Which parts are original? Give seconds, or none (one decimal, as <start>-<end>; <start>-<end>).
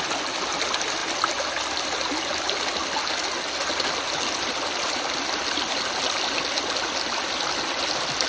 0.0-8.3